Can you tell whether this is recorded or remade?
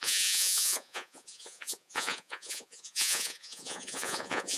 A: remade